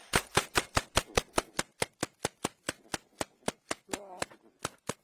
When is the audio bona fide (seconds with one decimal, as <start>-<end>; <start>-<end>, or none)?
0.0-5.0

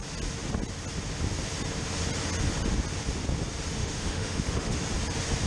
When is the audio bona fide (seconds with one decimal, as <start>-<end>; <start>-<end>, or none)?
0.0-3.8; 4.8-5.5

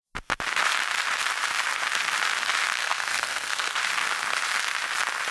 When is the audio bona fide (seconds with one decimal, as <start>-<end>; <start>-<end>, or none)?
0.0-2.8; 3.8-5.3

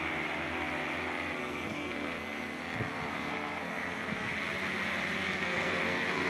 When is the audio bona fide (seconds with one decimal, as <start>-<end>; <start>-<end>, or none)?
0.0-1.4; 2.6-3.1; 4.3-5.2